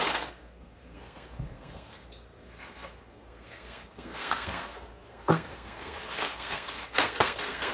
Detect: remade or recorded remade